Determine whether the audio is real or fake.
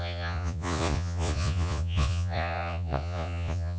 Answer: fake